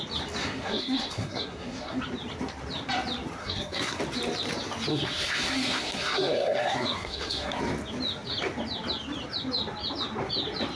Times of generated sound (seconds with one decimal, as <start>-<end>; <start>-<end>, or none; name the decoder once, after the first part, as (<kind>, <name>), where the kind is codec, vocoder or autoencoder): 0.4-2.0 (codec, SNAC); 3.4-4.0; 4.9-7.6